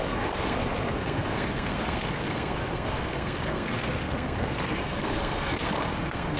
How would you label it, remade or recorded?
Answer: remade